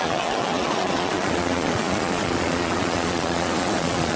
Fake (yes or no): yes